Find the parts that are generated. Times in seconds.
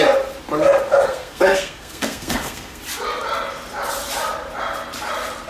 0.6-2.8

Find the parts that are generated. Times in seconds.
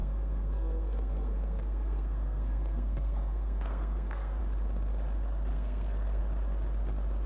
0.0-4.4; 5.5-6.2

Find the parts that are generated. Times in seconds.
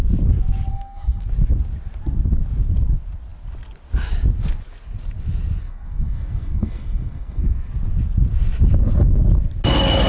0.7-1.3; 5.6-7.7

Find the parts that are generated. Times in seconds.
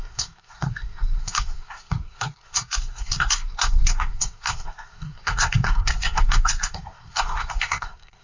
0.0-8.2